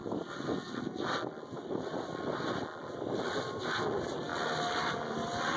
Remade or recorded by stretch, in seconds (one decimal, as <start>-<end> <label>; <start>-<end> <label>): 0.0-5.6 recorded